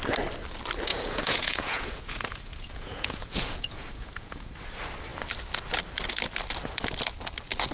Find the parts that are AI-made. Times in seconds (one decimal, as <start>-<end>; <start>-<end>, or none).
0.9-4.5